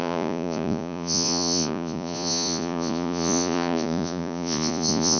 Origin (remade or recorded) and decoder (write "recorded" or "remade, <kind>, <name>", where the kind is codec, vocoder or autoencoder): remade, vocoder, Vocos